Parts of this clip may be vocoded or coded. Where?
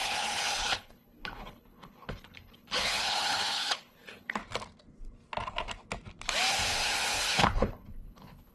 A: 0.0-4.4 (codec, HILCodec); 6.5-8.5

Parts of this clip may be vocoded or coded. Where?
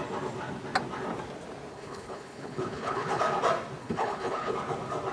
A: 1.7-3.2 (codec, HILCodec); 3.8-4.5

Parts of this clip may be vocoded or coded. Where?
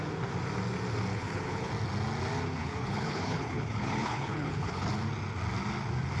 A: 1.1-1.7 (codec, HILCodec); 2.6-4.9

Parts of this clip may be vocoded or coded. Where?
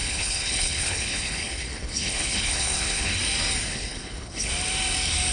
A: 0.0-3.2 (codec, HILCodec); 3.7-4.5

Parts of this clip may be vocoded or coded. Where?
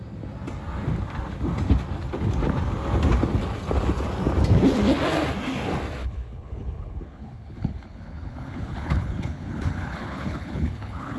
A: 6.0-11.2 (codec, HILCodec)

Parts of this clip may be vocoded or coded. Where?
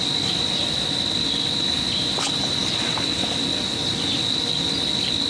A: none